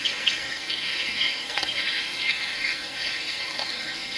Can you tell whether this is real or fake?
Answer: fake